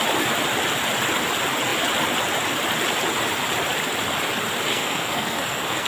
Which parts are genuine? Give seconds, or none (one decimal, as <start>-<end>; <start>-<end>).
0.0-4.7